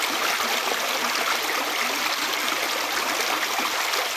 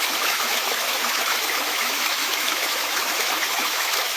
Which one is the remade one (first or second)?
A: second